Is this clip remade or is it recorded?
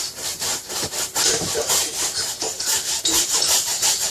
remade